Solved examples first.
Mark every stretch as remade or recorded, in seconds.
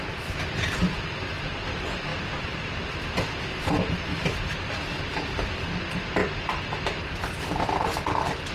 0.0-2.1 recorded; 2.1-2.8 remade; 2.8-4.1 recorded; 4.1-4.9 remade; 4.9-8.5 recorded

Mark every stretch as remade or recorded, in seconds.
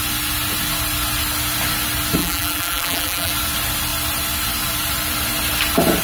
0.0-2.2 recorded; 2.2-3.3 remade; 3.3-6.0 recorded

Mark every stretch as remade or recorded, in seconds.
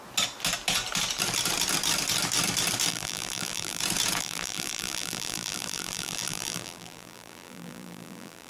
0.0-2.9 recorded; 2.9-3.8 remade; 3.8-4.2 recorded; 4.2-8.5 remade